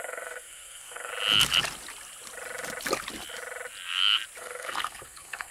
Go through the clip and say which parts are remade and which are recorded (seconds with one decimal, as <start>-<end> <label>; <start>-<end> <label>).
0.0-1.1 remade; 1.1-4.4 recorded; 4.4-5.5 remade